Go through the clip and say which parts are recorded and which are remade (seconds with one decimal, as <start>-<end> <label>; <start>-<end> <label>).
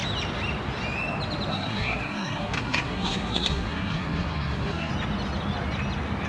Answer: 0.0-1.5 recorded; 1.5-4.9 remade; 4.9-6.3 recorded